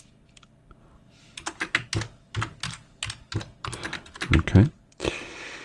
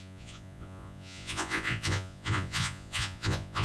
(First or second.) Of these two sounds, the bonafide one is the first